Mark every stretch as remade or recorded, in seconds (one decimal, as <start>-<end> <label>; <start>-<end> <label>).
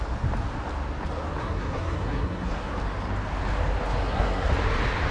0.0-1.4 recorded; 1.4-2.7 remade; 2.7-4.0 recorded; 4.0-4.5 remade; 4.5-5.1 recorded